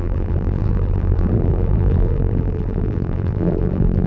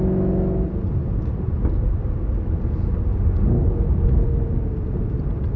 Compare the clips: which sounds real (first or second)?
second